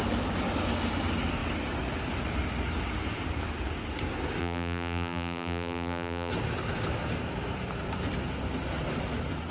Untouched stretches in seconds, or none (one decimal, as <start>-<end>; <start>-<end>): 0.0-4.4; 6.3-9.5